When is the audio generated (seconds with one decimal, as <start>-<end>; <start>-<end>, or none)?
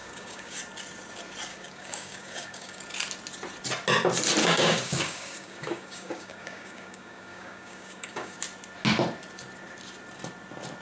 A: 0.0-0.6; 1.5-2.8; 4.4-8.4